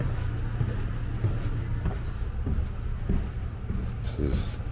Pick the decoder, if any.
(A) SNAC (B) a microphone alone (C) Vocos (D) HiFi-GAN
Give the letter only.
B